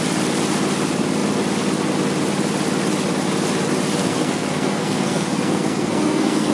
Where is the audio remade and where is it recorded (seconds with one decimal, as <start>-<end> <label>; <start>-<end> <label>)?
0.0-4.0 recorded; 4.0-6.5 remade